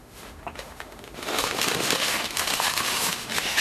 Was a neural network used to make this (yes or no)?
yes